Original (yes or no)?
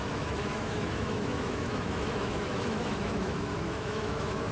no